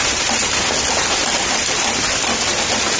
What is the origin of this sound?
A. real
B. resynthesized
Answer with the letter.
A